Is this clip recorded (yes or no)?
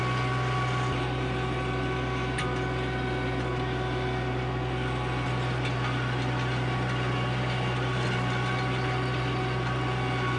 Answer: yes